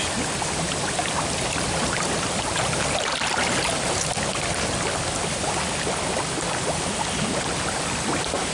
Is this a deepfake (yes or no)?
no